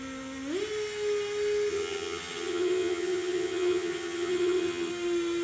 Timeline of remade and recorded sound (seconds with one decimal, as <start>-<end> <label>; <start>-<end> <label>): 0.0-1.7 recorded; 1.7-4.9 remade; 4.9-5.4 recorded